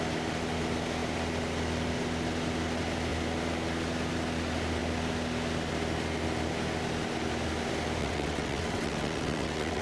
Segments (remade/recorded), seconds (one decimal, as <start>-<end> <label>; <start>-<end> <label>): 0.0-8.0 recorded; 8.0-9.8 remade